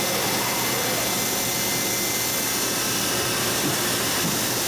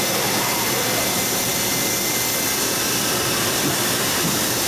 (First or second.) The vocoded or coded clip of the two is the second